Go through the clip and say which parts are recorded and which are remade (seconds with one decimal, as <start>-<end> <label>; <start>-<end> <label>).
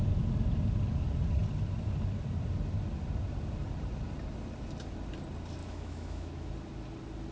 0.0-5.6 recorded; 5.6-6.5 remade; 6.5-7.3 recorded